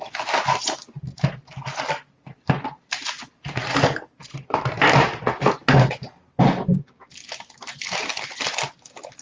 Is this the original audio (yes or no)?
yes